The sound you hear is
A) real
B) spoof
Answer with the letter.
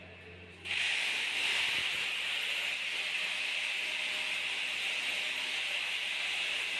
A